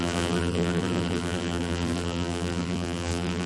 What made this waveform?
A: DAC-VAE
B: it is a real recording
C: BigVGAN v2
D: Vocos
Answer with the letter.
C